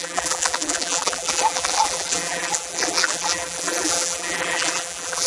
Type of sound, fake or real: fake